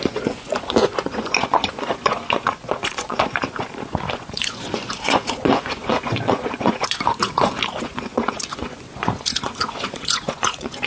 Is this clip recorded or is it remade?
remade